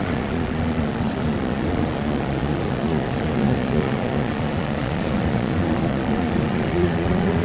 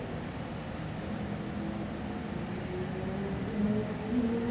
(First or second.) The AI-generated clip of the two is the first